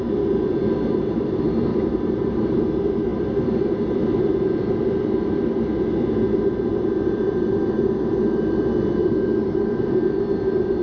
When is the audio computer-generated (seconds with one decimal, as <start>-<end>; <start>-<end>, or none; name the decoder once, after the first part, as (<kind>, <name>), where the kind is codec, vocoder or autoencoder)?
1.7-2.6 (vocoder, BigVGAN v2)